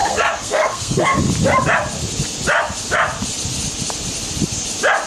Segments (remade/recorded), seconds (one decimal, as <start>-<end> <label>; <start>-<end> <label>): 0.0-1.2 remade; 1.2-5.1 recorded